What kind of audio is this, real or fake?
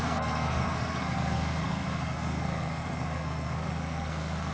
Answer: fake